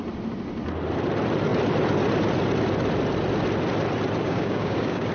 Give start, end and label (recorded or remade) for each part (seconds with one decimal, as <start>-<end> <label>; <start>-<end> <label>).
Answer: 0.0-4.2 recorded; 4.2-5.1 remade